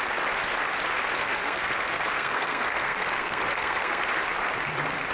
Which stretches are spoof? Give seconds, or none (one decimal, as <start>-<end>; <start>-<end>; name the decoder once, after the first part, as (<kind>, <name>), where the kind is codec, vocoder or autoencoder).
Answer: 1.2-4.0 (codec, SNAC)

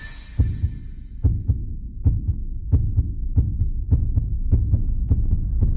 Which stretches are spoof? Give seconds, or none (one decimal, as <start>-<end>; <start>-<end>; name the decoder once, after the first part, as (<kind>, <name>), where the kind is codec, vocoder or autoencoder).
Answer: none

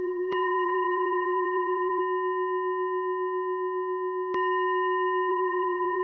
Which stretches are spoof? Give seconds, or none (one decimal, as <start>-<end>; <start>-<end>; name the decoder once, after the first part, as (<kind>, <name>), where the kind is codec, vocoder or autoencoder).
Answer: 0.0-2.0 (vocoder, BigVGAN v2); 5.3-6.0